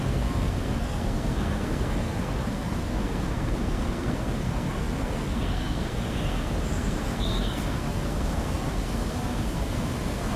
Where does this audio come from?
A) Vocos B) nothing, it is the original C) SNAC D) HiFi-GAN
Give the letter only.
C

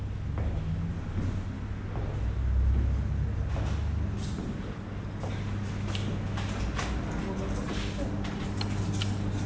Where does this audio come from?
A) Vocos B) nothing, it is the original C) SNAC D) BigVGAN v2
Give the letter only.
B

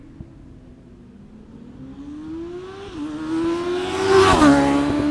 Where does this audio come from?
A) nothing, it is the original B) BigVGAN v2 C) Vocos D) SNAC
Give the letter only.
A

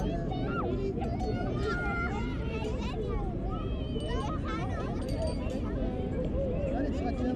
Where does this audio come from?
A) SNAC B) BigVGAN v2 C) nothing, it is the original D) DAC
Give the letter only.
C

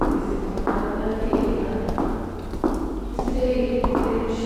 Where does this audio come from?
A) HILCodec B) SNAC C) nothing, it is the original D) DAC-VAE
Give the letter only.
C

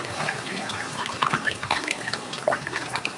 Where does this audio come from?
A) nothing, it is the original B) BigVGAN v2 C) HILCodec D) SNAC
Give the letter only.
D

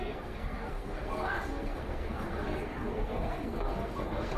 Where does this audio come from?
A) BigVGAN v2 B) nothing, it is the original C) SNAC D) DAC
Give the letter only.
C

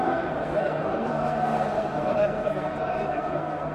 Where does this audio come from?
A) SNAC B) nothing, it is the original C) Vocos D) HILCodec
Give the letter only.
A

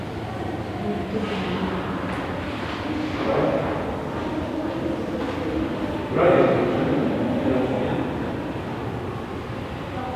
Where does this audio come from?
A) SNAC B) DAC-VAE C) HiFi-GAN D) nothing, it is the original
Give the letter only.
D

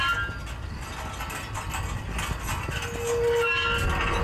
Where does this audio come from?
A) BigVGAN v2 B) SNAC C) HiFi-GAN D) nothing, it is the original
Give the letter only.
D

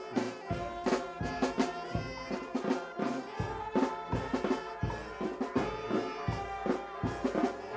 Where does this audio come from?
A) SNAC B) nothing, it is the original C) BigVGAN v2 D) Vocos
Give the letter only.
B